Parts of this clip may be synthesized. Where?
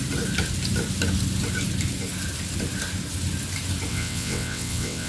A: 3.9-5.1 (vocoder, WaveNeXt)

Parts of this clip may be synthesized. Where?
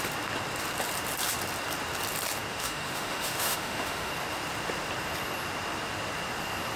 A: 2.5-4.1 (autoencoder, DAC-VAE)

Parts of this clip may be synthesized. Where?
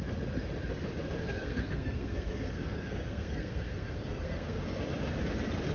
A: 1.2-4.6 (codec, SNAC)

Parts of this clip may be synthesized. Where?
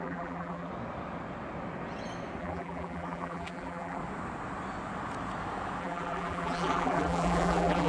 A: 0.0-0.7 (vocoder, BigVGAN v2); 2.4-4.0; 5.8-7.9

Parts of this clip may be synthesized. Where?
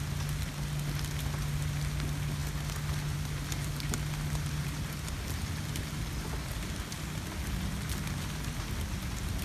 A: none